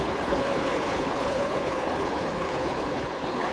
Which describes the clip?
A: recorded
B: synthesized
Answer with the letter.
B